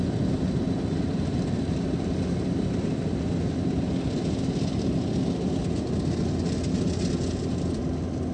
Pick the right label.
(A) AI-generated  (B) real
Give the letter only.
B